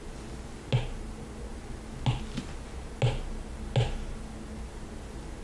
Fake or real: real